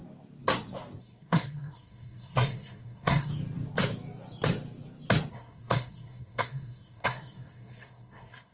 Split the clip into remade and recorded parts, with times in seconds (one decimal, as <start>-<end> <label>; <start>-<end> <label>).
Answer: 0.0-1.0 recorded; 1.0-3.3 remade; 3.3-5.3 recorded; 5.3-8.5 remade